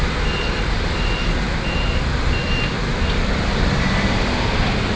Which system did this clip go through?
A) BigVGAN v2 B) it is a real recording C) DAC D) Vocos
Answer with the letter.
A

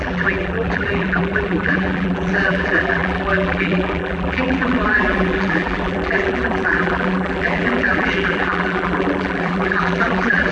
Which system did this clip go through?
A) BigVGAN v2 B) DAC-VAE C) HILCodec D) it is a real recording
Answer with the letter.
A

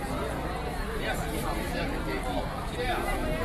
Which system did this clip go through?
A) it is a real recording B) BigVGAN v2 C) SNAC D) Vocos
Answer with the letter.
A